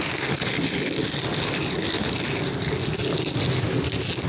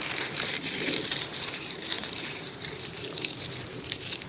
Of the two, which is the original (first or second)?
first